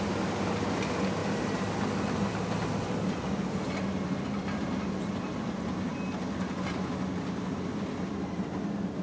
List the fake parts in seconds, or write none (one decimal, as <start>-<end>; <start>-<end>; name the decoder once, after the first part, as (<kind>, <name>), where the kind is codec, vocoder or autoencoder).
none